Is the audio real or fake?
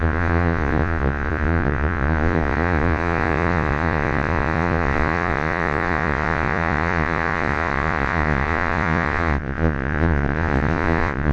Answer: fake